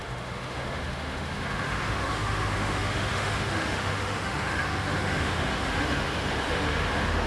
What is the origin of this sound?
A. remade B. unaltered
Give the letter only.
A